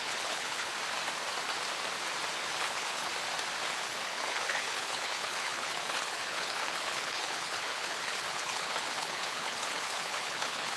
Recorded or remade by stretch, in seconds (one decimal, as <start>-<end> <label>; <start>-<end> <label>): 0.0-0.7 remade; 0.7-2.6 recorded; 2.6-3.1 remade; 3.1-3.7 recorded; 3.7-10.8 remade